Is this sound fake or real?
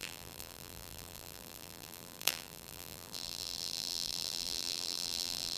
fake